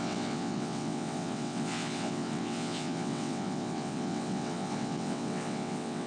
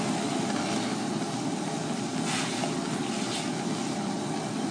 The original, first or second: second